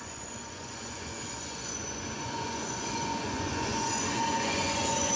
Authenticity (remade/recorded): remade